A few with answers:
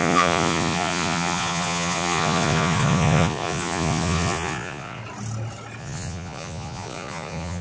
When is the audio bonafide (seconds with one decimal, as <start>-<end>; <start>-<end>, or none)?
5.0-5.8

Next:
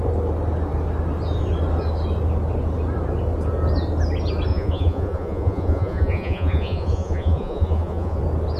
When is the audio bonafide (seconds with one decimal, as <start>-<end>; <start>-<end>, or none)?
0.0-4.5; 8.2-8.6

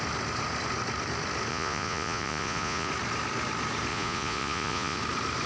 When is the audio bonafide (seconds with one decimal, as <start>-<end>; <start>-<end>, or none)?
0.0-1.5; 2.9-3.9; 5.0-5.5

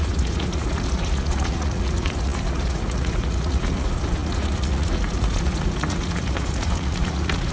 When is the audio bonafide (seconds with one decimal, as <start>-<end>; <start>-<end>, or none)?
none

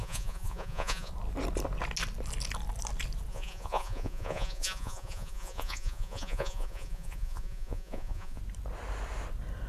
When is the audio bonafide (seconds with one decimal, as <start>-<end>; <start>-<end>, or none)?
1.1-3.3; 8.4-9.7

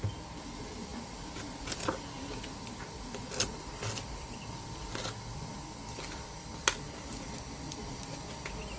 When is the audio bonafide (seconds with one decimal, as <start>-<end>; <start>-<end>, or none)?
0.0-8.8